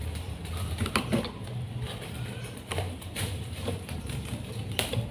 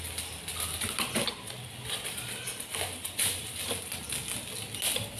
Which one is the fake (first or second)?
first